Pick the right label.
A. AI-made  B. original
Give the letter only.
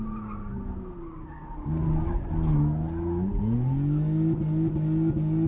B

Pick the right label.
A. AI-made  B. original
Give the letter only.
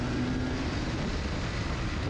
B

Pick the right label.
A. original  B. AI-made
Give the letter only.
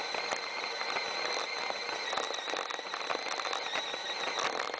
A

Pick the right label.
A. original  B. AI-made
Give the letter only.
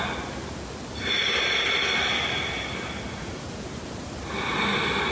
A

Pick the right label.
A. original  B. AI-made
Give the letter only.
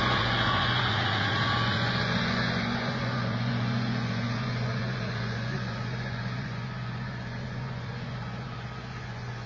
B